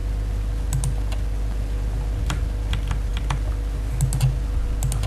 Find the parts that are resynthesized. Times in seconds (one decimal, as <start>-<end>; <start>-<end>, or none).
none